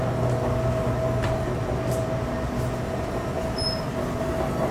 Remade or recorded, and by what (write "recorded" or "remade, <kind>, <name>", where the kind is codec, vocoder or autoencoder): recorded